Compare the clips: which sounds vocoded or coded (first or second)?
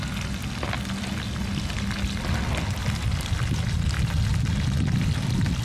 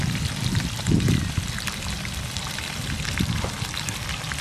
second